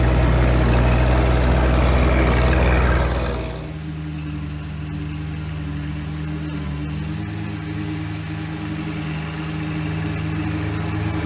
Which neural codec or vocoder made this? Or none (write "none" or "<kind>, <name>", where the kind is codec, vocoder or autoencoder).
none